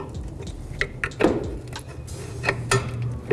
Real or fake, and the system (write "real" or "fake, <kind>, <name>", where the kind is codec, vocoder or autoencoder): real